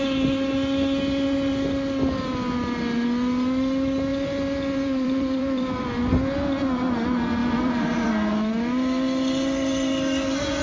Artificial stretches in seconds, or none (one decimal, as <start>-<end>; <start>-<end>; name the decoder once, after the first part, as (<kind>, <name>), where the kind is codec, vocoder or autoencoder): 4.1-5.8 (vocoder, BigVGAN v2); 7.4-8.1